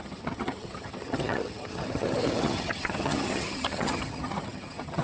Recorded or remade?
remade